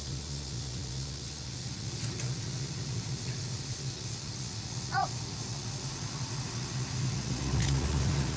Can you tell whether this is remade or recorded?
remade